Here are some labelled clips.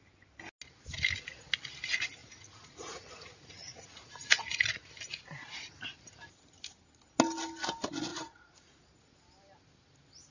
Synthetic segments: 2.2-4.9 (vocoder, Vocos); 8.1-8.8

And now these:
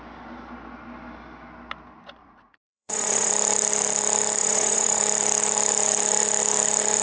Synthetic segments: 2.2-3.3 (vocoder, Vocos); 4.4-5.0

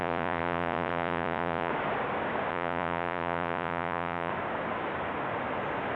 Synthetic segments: 0.0-1.7 (vocoder, Vocos); 2.5-4.3

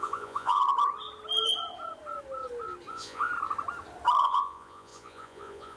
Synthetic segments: 0.0-0.6 (vocoder, Vocos); 2.9-3.3; 4.2-5.8

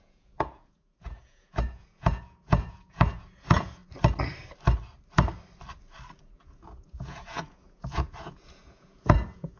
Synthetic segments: 0.0-3.8 (vocoder, Vocos); 6.2-9.6

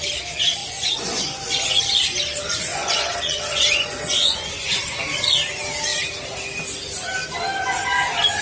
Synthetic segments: 0.6-1.8 (vocoder, Vocos); 2.7-5.0

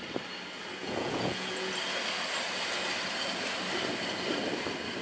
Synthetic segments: 0.8-1.7 (vocoder, Vocos)

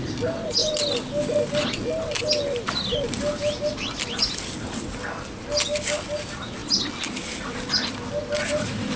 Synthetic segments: none